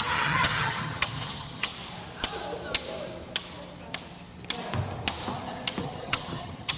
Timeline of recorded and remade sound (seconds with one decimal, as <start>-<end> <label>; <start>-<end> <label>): 0.0-1.7 remade; 1.7-5.8 recorded; 5.8-6.8 remade